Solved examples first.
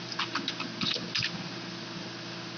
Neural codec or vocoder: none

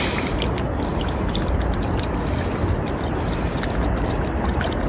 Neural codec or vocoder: none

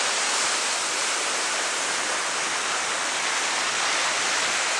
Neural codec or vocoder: vocoder, BigVGAN v2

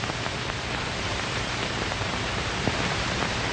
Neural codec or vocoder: vocoder, BigVGAN v2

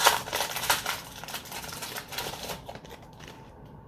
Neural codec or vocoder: vocoder, BigVGAN v2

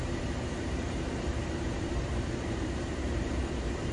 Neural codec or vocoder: vocoder, BigVGAN v2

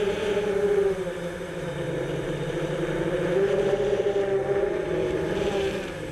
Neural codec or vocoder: vocoder, BigVGAN v2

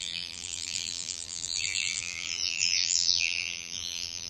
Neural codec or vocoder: vocoder, BigVGAN v2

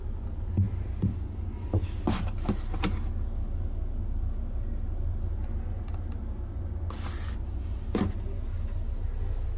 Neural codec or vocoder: none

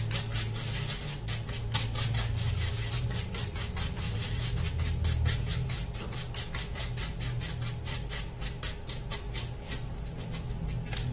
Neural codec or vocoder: none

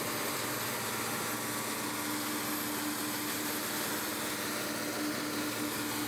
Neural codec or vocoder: none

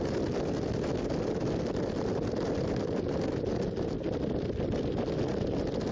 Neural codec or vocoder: none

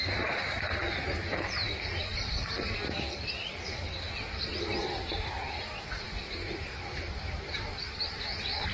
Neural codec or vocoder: vocoder, BigVGAN v2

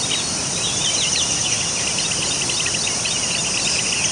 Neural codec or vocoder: none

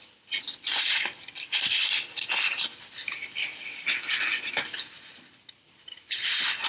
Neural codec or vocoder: none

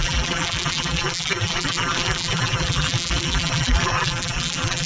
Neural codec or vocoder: vocoder, BigVGAN v2